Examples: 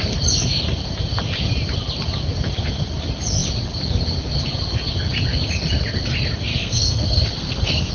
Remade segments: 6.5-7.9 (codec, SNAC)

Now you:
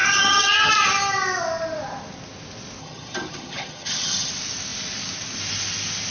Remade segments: 0.0-0.7 (vocoder, HiFi-GAN); 2.8-4.3

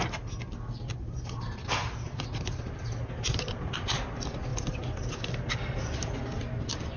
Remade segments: none

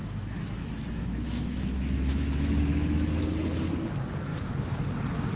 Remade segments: 0.0-3.2 (autoencoder, DAC-VAE); 4.3-4.8

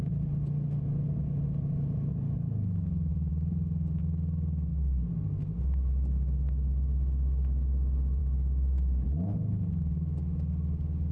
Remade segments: 3.1-4.0 (vocoder, BigVGAN v2)